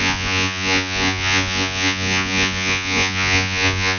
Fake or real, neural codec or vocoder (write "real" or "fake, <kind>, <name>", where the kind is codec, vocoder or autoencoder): fake, vocoder, Vocos